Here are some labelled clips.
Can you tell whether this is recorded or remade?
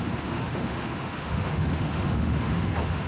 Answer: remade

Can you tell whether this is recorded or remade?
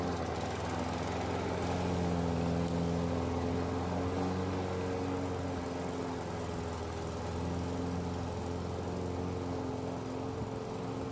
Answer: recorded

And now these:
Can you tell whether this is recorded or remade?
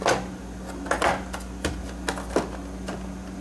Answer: recorded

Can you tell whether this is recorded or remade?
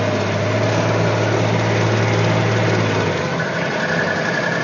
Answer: recorded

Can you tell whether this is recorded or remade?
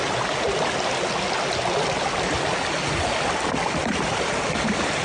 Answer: recorded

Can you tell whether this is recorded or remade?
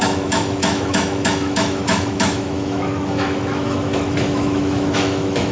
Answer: remade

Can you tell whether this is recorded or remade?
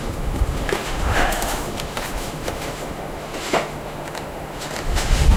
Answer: remade